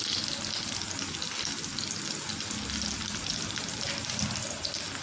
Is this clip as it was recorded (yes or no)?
yes